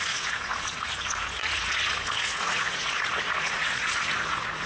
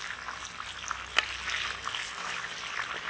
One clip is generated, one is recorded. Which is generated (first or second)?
first